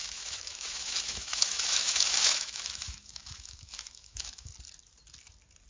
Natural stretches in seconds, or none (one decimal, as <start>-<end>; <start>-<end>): 4.5-5.7